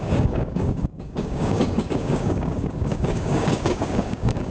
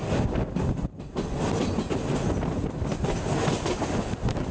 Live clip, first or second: second